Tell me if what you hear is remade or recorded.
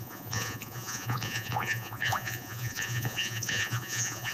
remade